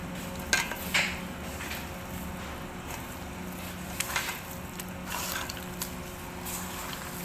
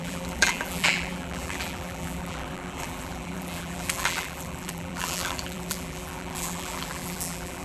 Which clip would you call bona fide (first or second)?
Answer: first